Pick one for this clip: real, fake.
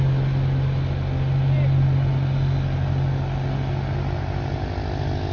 real